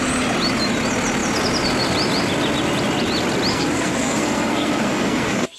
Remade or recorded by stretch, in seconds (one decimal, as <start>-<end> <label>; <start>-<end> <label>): 0.0-3.5 recorded; 3.5-5.6 remade